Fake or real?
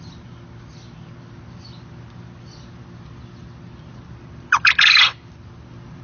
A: real